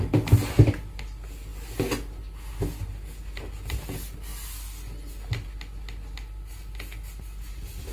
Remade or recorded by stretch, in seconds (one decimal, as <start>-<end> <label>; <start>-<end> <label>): 0.0-7.9 recorded

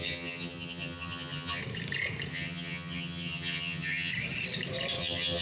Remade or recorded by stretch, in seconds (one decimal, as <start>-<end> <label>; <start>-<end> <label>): 0.0-1.6 remade; 1.6-2.3 recorded; 2.3-4.1 remade; 4.1-5.0 recorded; 5.0-5.4 remade